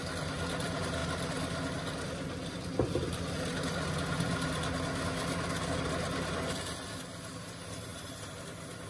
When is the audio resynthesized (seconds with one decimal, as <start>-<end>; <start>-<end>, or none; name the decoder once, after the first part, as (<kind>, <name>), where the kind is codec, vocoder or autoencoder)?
none